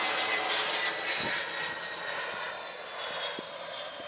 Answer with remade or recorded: recorded